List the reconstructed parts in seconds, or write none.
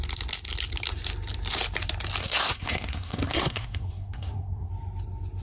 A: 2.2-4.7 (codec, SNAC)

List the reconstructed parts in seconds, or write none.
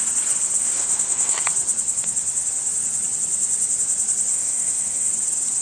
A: 0.6-1.4 (codec, SNAC); 4.3-5.1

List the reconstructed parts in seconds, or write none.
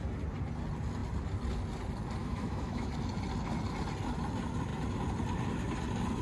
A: 2.2-2.9 (autoencoder, DAC-VAE)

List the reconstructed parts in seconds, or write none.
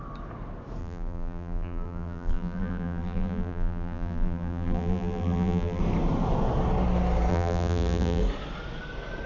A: 0.8-5.8 (vocoder, BigVGAN v2); 7.3-8.2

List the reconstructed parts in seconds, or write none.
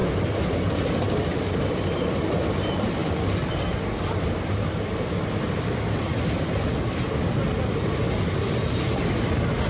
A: 0.0-1.7 (vocoder, BigVGAN v2); 3.0-5.0